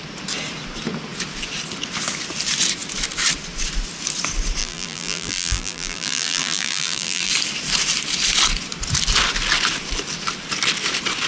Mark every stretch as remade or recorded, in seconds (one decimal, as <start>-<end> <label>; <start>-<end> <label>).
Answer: 0.0-4.6 recorded; 4.6-7.3 remade; 7.3-11.3 recorded